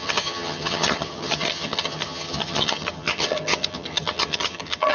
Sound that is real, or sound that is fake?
fake